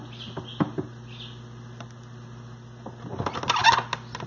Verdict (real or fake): real